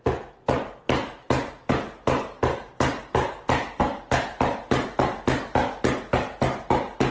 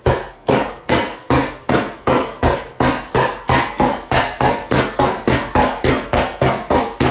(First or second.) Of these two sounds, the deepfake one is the second